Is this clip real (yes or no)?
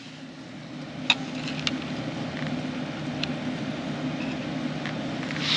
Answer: yes